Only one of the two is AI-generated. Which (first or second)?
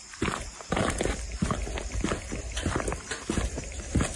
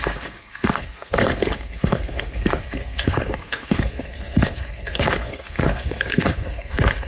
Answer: second